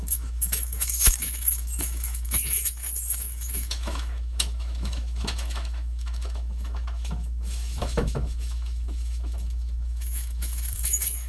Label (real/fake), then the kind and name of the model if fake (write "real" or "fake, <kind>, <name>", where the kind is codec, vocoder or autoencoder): fake, autoencoder, DAC-VAE